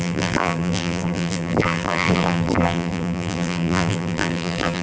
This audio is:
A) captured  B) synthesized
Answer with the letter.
B